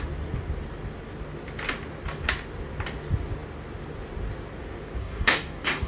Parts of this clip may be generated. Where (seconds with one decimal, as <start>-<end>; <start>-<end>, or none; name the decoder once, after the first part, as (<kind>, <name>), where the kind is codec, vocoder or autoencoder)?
5.0-5.9 (codec, DAC)